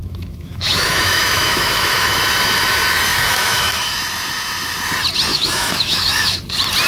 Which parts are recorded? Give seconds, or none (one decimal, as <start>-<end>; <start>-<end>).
2.2-3.1; 3.9-5.3; 6.4-6.9